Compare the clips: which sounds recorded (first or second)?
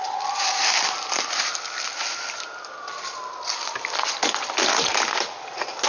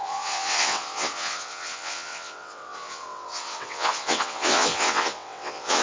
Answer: first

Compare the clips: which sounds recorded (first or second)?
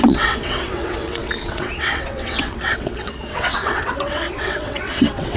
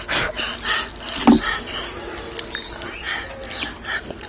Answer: second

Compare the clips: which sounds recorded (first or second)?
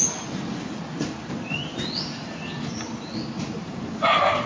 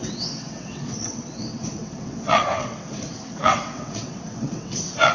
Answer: first